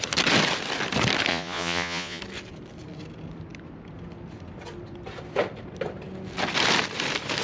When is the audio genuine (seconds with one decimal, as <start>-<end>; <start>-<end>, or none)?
0.0-1.3; 2.2-7.4